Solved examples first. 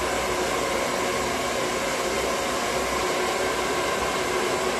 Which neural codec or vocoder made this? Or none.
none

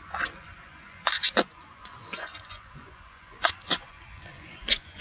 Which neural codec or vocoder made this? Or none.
vocoder, Vocos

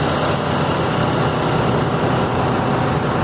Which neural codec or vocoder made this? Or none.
none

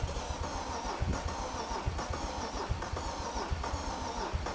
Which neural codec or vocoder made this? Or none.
none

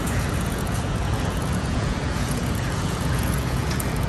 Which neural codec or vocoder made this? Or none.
vocoder, Vocos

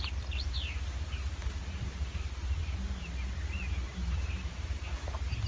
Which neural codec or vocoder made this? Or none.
none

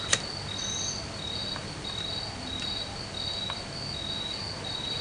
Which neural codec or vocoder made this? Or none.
none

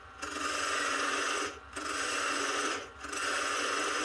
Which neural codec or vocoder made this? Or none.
vocoder, Vocos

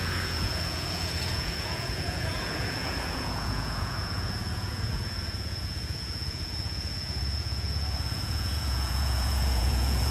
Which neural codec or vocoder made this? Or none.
vocoder, Vocos